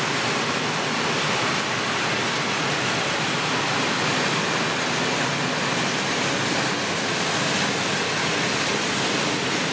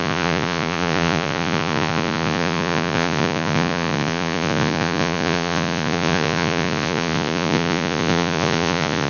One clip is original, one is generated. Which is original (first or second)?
first